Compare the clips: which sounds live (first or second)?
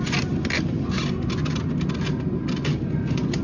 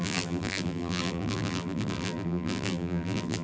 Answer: first